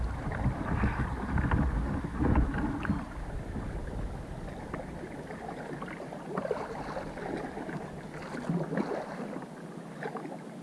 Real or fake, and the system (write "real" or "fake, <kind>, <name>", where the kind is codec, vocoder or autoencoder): real